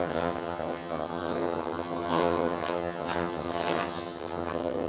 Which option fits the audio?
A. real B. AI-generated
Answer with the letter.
B